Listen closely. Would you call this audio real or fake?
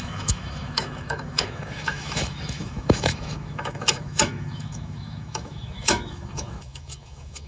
fake